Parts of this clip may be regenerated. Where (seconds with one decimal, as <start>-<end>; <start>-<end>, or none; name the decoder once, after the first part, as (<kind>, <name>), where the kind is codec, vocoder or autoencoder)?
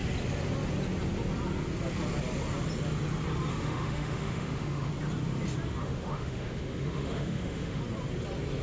3.5-4.9 (autoencoder, DAC-VAE); 5.8-7.8